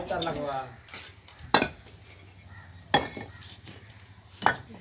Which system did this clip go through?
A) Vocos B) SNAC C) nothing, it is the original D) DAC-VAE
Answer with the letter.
C